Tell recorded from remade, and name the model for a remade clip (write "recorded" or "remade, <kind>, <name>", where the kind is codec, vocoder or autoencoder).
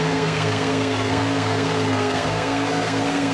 remade, codec, SNAC